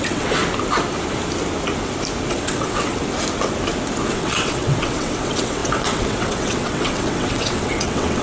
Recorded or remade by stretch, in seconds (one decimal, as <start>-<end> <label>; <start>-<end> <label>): 0.0-0.4 remade; 0.4-2.3 recorded; 2.3-3.0 remade; 3.0-4.1 recorded; 4.1-8.2 remade

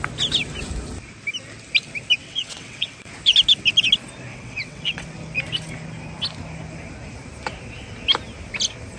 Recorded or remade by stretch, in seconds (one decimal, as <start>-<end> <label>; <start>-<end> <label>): 0.0-2.2 recorded; 2.2-3.1 remade; 3.1-4.3 recorded; 4.3-5.1 remade; 5.1-9.0 recorded

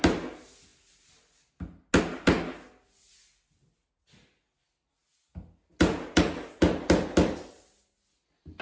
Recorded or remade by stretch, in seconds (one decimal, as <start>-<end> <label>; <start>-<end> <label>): 0.0-8.6 recorded

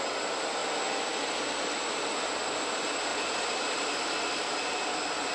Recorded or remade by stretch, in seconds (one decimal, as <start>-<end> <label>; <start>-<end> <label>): 0.0-5.3 recorded

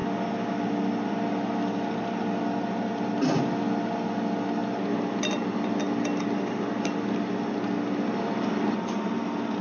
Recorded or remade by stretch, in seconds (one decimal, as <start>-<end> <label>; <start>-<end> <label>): 0.0-9.6 recorded

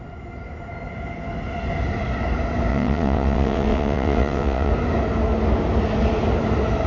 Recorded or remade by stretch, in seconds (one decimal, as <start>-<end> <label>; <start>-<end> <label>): 0.0-2.7 recorded; 2.7-4.7 remade; 4.7-6.9 recorded

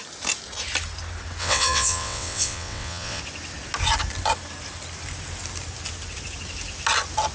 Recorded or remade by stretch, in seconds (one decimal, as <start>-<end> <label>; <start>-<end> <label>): 0.0-1.4 recorded; 1.4-3.2 remade; 3.2-7.3 recorded